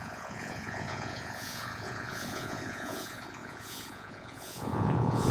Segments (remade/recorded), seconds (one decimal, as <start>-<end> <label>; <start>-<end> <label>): 0.0-5.3 remade